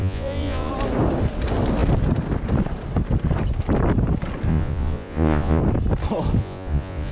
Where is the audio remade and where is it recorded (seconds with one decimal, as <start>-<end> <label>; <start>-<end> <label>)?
0.0-0.7 remade; 0.7-4.5 recorded; 4.5-5.6 remade; 5.6-6.4 recorded; 6.4-7.1 remade